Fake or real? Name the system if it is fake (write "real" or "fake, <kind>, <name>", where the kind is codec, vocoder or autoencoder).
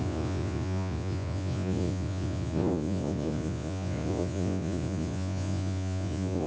fake, vocoder, Vocos